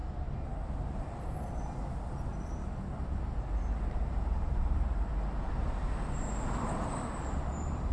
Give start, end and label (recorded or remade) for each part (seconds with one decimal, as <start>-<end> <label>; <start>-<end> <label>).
0.0-3.8 recorded; 3.8-5.1 remade; 5.1-6.0 recorded; 6.0-7.9 remade